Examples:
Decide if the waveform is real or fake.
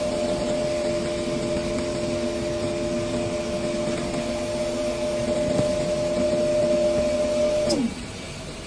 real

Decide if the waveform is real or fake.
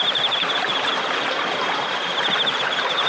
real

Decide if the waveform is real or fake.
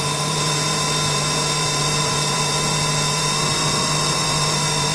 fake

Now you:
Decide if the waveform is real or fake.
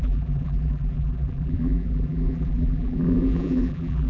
fake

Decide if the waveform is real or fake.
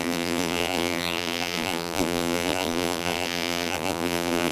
fake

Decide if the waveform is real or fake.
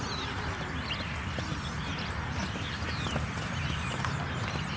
fake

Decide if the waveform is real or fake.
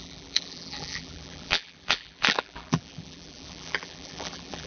fake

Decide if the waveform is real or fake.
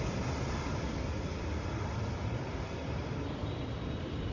fake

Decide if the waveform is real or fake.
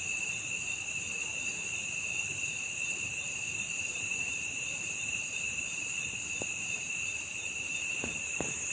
fake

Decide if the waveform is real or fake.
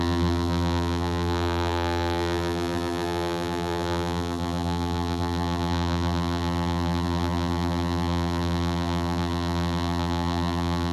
fake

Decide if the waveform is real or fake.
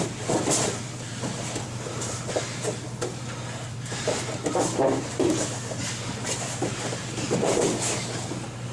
real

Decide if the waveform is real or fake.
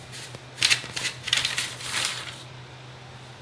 real